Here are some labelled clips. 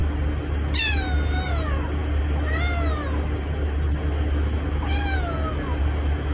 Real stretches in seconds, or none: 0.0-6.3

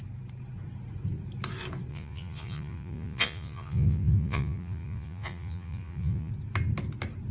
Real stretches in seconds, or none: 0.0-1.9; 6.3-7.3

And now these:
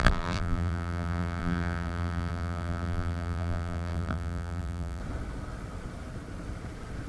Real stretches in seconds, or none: 5.0-7.1